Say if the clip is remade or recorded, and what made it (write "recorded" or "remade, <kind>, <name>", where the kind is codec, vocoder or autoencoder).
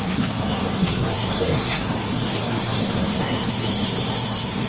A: remade, codec, SNAC